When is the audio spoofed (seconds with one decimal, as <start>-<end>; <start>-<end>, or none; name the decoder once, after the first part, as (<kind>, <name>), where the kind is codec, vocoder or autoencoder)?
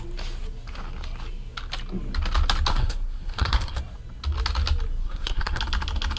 2.7-3.8 (codec, SNAC); 5.0-5.6